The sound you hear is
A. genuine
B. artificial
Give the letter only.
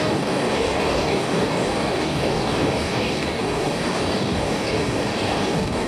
B